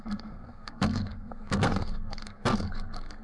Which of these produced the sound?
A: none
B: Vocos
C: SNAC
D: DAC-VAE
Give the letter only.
C